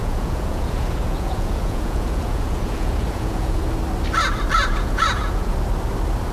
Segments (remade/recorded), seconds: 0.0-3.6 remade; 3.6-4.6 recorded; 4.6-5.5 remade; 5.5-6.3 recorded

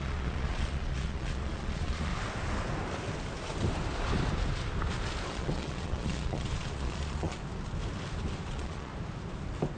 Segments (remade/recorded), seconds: 0.0-2.1 remade; 2.1-5.3 recorded; 5.3-7.4 remade; 7.4-8.5 recorded; 8.5-8.9 remade; 8.9-9.8 recorded

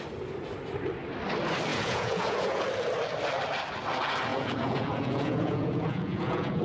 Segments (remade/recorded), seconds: 0.0-1.7 recorded; 1.7-2.6 remade; 2.6-4.3 recorded; 4.3-6.6 remade